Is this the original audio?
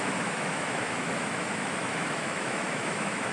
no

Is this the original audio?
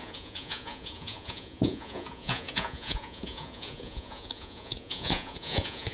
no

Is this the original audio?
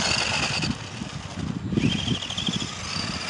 yes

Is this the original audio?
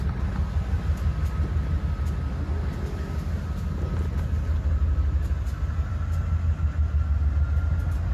yes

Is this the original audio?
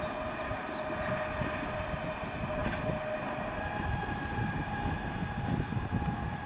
yes